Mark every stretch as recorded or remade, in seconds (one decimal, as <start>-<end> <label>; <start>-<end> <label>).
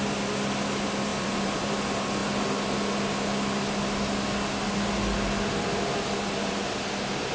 0.0-1.1 recorded; 1.1-1.7 remade; 1.7-7.3 recorded